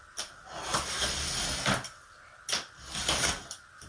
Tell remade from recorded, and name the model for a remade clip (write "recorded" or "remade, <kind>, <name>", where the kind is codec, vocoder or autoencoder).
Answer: recorded